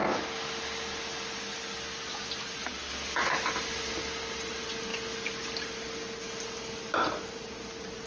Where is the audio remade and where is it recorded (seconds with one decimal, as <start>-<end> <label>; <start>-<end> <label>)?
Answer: 0.0-8.1 recorded